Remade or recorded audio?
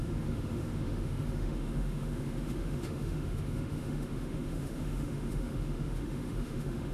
remade